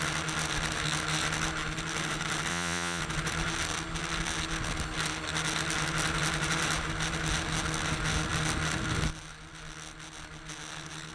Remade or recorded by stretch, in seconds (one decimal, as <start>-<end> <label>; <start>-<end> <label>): 0.0-2.5 recorded; 2.5-3.0 remade; 3.0-11.1 recorded